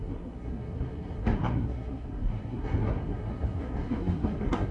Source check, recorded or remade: remade